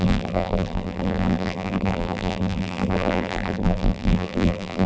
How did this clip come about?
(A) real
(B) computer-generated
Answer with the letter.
B